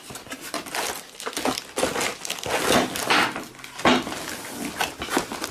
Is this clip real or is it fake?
real